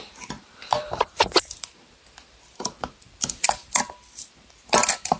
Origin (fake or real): fake